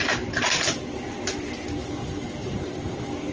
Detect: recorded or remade recorded